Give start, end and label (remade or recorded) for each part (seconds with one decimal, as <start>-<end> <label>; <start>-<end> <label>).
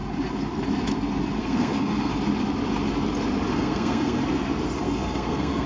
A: 0.0-1.4 recorded; 1.4-2.1 remade; 2.1-3.5 recorded; 3.5-4.2 remade; 4.2-4.8 recorded; 4.8-5.7 remade